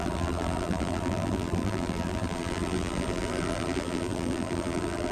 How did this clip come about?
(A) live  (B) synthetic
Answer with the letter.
B